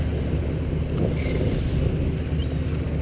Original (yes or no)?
yes